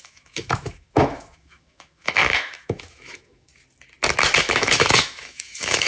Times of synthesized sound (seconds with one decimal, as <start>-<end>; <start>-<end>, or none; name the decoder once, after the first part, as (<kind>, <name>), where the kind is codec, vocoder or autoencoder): 0.0-3.5 (autoencoder, DAC-VAE); 4.4-5.9